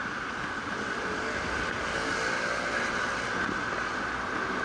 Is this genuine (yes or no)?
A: yes